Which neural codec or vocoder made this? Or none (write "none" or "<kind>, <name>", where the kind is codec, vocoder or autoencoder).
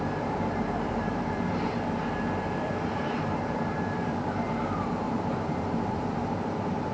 vocoder, BigVGAN v2